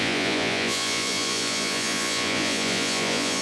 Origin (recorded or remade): remade